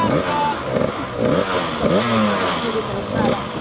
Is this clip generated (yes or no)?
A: no